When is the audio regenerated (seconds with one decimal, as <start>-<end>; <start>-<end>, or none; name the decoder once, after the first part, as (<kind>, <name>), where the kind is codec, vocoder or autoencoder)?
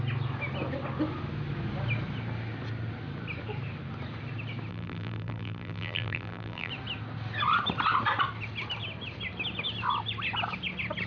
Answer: 4.7-6.7 (vocoder, BigVGAN v2)